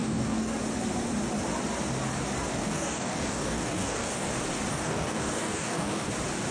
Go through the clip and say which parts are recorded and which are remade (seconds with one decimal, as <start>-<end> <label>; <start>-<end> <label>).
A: 0.0-0.5 remade; 0.5-2.5 recorded; 2.5-4.3 remade; 4.3-4.7 recorded; 4.7-6.1 remade; 6.1-6.5 recorded